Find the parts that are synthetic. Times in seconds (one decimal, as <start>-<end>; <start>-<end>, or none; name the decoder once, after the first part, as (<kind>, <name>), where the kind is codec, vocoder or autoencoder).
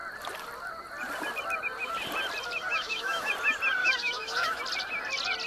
2.7-3.3 (autoencoder, DAC-VAE); 3.8-4.6